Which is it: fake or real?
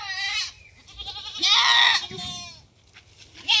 real